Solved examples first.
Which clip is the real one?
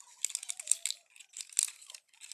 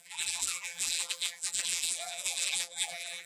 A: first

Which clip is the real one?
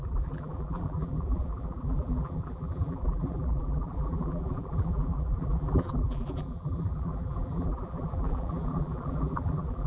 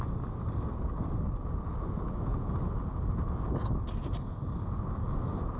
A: second